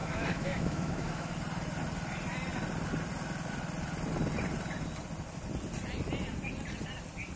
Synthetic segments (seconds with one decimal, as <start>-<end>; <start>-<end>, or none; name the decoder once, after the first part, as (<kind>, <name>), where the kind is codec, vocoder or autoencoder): 0.0-1.3 (autoencoder, DAC-VAE)